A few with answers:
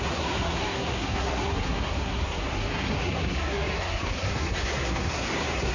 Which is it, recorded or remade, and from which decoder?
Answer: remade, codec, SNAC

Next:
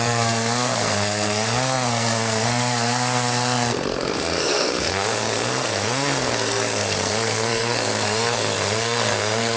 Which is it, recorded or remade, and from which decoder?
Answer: remade, codec, SNAC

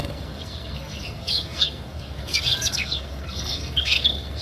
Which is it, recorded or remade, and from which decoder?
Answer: remade, codec, SNAC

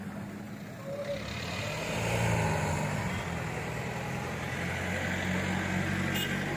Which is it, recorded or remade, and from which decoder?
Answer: recorded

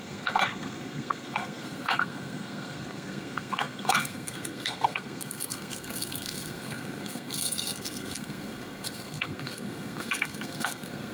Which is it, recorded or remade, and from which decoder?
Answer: remade, codec, SNAC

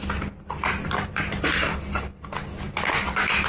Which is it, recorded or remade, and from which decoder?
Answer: recorded